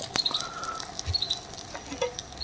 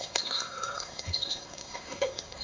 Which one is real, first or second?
first